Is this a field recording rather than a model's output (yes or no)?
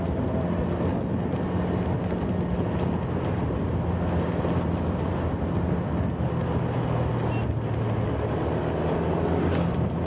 yes